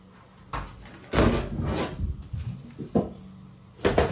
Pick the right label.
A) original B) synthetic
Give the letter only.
A